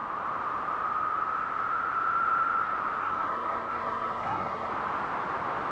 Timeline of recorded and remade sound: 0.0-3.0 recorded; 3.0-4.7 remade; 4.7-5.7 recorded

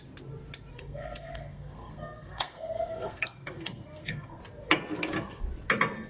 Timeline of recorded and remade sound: 0.0-0.7 recorded; 0.7-4.4 remade; 4.4-6.1 recorded

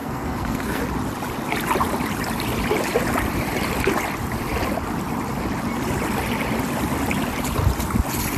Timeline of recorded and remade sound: 0.0-0.8 remade; 0.8-8.4 recorded

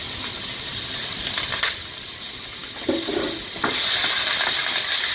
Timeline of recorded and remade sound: 0.0-5.1 recorded